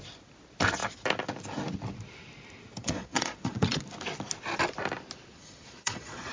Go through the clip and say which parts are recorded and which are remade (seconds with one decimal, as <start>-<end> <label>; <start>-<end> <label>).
0.0-2.8 recorded; 2.8-3.8 remade; 3.8-5.3 recorded; 5.3-6.3 remade